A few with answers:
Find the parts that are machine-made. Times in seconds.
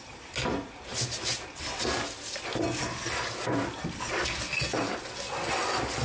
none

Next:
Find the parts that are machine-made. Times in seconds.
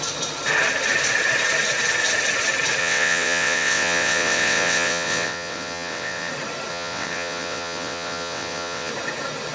2.8-6.3; 6.7-8.9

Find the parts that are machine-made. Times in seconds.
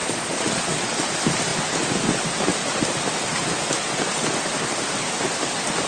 0.0-1.1